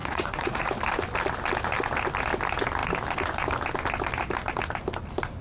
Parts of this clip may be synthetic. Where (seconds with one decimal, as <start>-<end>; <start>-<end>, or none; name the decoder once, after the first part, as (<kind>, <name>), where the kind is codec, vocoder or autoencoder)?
0.0-0.7 (vocoder, Vocos)